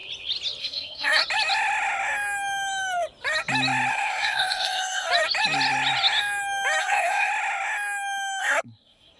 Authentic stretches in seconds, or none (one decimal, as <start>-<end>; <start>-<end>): 0.0-0.6; 1.2-3.9; 5.1-6.8; 7.3-8.4